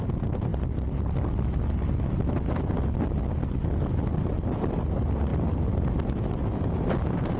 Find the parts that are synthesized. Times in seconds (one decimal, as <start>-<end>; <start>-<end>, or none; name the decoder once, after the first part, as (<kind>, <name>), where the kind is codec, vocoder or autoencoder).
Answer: none